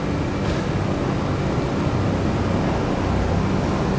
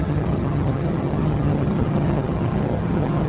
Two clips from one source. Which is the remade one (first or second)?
second